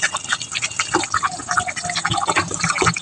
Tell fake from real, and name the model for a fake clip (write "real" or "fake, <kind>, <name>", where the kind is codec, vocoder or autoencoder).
real